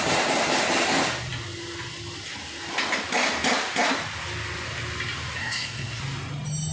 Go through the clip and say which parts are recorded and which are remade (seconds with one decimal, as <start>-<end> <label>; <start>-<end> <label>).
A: 0.0-5.4 recorded; 5.4-6.0 remade; 6.0-6.7 recorded

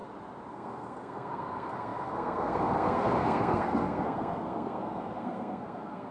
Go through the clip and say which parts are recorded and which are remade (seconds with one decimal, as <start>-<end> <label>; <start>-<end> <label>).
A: 0.0-0.5 recorded; 0.5-6.1 remade

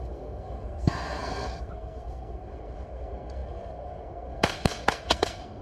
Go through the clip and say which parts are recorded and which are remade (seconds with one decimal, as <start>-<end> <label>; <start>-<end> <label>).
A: 0.0-5.6 remade

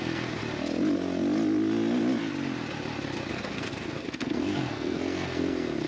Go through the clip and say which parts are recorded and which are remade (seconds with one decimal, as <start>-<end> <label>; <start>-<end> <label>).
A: 0.0-0.4 remade; 0.4-3.3 recorded; 3.3-5.9 remade

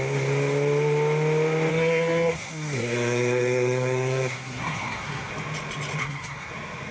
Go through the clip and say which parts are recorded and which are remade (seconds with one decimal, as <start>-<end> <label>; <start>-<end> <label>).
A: 0.0-1.7 recorded; 1.7-5.3 remade; 5.3-6.0 recorded; 6.0-6.5 remade; 6.5-6.9 recorded

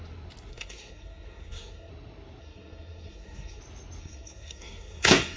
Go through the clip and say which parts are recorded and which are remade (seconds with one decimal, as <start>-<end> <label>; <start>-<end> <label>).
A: 0.0-0.5 recorded; 0.5-1.9 remade; 1.9-2.4 recorded; 2.4-3.6 remade; 3.6-4.0 recorded; 4.0-5.4 remade